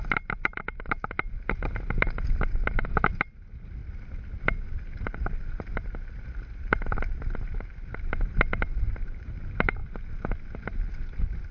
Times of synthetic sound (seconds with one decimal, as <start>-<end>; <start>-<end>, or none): 0.0-3.8; 4.4-9.8